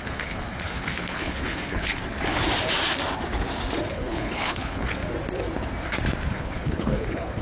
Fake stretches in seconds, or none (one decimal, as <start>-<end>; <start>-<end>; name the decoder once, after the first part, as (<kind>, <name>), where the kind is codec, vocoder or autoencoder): 0.0-2.0 (codec, HILCodec); 3.9-4.9; 6.3-7.4